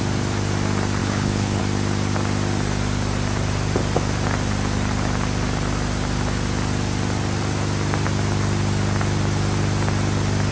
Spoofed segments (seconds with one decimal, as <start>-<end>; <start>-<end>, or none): 1.0-1.6